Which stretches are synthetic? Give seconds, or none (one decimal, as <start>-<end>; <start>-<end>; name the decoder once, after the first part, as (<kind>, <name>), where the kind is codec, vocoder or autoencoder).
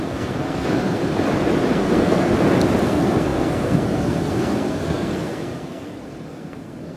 0.0-1.0 (codec, SNAC); 1.7-2.3; 2.8-7.0